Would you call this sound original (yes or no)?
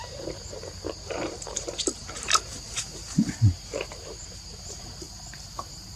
no